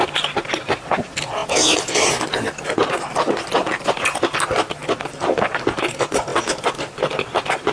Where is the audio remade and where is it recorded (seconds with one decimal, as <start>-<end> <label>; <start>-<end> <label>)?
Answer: 0.0-6.3 recorded; 6.3-7.1 remade; 7.1-7.7 recorded